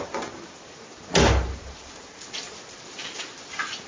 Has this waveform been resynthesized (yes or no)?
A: no